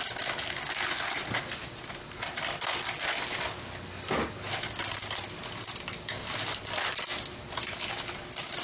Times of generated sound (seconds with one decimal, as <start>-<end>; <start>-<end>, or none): none